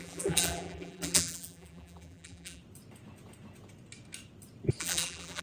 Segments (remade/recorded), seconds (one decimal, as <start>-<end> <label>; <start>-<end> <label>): 0.0-2.6 remade; 2.6-4.8 recorded; 4.8-5.4 remade